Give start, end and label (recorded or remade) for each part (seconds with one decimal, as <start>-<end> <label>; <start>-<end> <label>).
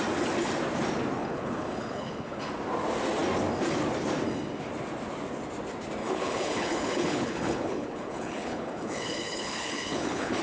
0.0-1.2 recorded; 1.2-2.5 remade; 2.5-6.0 recorded; 6.0-10.4 remade